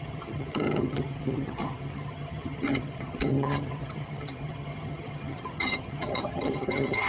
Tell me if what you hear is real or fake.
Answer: fake